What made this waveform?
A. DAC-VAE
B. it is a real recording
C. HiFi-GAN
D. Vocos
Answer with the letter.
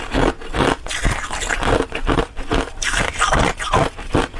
B